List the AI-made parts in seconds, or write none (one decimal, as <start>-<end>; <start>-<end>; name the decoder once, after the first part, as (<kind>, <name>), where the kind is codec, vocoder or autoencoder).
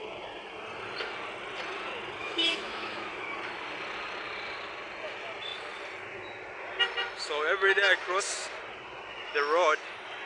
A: 2.2-3.3 (autoencoder, DAC-VAE)